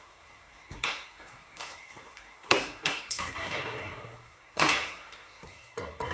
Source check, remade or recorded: remade